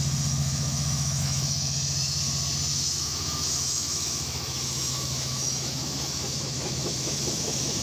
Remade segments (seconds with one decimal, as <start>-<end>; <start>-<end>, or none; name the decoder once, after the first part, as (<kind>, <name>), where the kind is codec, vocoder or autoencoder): 0.4-2.2 (autoencoder, DAC-VAE); 2.7-7.8